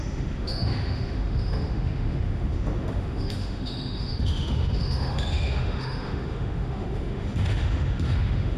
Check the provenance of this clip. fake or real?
fake